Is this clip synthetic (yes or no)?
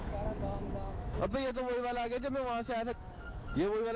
yes